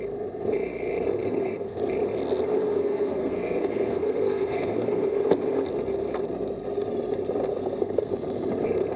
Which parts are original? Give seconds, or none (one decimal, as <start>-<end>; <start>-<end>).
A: 0.0-1.2; 1.8-2.7; 5.2-7.5; 8.1-9.0